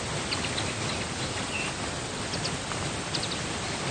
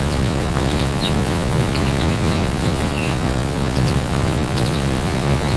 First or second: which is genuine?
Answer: first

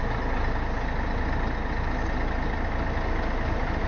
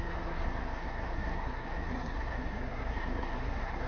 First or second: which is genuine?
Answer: first